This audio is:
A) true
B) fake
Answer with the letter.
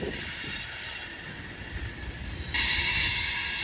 B